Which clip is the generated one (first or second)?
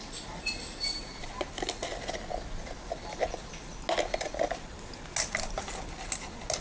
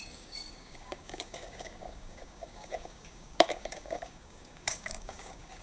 second